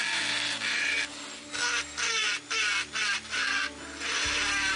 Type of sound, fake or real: real